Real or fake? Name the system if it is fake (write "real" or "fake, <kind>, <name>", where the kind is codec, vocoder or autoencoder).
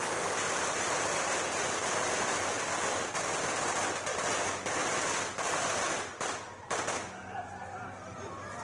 real